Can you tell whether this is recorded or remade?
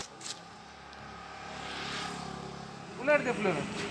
recorded